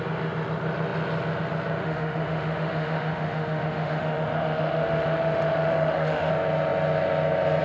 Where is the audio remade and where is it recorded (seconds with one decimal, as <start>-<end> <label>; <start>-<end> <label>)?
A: 0.0-1.8 recorded; 1.8-6.3 remade; 6.3-7.6 recorded